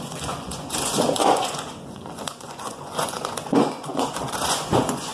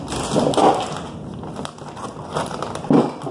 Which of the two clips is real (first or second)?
second